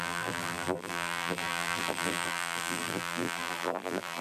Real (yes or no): no